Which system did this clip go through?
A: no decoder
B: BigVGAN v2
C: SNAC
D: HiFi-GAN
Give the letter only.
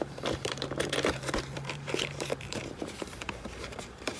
B